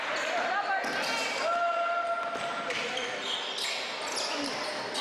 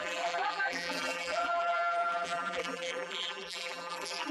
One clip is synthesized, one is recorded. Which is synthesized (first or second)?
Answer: second